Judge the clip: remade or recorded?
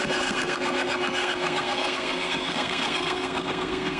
remade